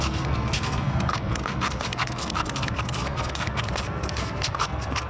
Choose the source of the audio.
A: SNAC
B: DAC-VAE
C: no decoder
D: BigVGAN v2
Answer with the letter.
A